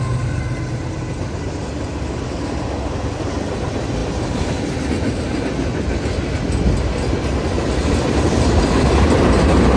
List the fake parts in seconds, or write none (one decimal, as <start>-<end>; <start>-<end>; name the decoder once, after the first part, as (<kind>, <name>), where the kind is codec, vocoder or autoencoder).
7.2-8.6 (vocoder, BigVGAN v2)